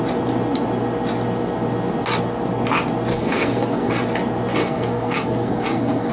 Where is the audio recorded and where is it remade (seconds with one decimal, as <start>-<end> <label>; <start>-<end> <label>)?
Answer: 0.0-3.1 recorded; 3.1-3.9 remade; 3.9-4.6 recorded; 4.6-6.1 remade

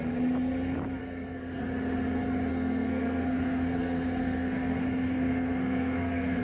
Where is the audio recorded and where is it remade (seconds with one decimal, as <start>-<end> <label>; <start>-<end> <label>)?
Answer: 0.0-1.0 recorded; 1.0-1.6 remade; 1.6-2.5 recorded; 2.5-6.4 remade

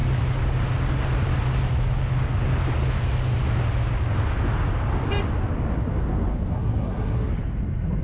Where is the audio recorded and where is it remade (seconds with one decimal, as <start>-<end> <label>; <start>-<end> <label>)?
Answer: 0.0-6.5 recorded; 6.5-7.3 remade; 7.3-8.0 recorded

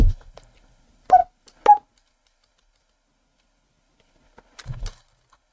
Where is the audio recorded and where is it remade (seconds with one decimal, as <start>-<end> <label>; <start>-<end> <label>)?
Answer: 0.0-5.5 recorded

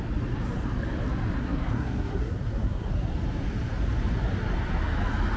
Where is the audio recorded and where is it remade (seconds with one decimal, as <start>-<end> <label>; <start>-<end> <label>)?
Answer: 0.0-1.4 recorded; 1.4-2.9 remade; 2.9-5.4 recorded

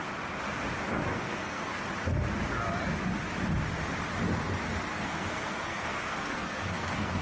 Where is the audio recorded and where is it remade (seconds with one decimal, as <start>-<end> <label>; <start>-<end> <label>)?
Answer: 0.0-1.1 recorded; 1.1-1.8 remade; 1.8-4.9 recorded; 4.9-7.2 remade